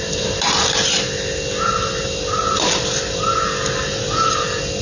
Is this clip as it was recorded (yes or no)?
yes